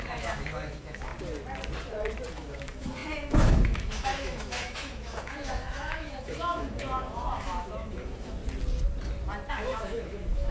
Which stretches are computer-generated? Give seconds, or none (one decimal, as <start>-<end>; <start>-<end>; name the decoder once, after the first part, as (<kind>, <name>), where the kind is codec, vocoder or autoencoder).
0.0-1.1 (autoencoder, DAC-VAE); 2.3-8.4; 9.5-10.5